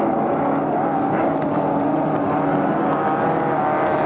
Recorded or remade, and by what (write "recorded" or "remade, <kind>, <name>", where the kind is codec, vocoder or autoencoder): recorded